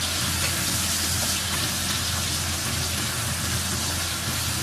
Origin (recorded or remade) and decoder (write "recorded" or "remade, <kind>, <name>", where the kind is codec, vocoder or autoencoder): recorded